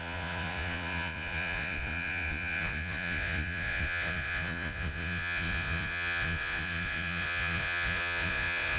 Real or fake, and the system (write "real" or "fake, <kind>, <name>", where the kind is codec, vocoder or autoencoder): fake, vocoder, Vocos